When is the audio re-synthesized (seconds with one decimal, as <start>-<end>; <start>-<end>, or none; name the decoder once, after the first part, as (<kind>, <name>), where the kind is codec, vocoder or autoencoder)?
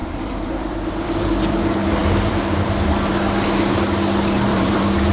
0.0-3.1 (vocoder, BigVGAN v2); 4.5-5.1